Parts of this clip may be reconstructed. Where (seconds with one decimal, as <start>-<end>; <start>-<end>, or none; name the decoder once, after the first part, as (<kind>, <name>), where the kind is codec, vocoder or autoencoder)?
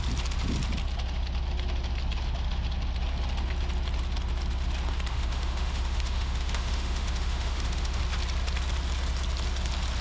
5.1-8.0 (autoencoder, DAC-VAE)